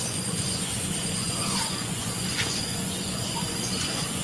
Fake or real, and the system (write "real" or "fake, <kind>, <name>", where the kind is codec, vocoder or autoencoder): fake, vocoder, Vocos